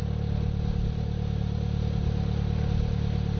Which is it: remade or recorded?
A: recorded